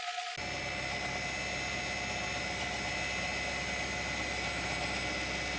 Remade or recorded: recorded